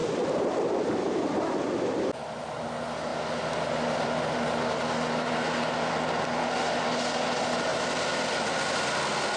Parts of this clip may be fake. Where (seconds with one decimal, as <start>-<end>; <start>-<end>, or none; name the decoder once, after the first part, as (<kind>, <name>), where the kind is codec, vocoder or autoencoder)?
none